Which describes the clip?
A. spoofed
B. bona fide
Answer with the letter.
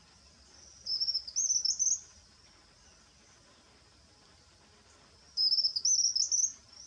B